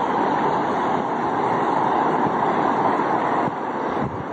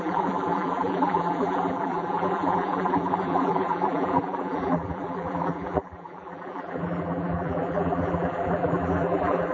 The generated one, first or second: second